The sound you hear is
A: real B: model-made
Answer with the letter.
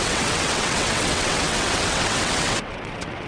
B